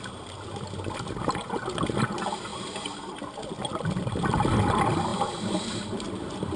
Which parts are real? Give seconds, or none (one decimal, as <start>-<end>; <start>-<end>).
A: 0.0-2.5; 3.4-5.1